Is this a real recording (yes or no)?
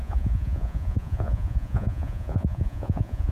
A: no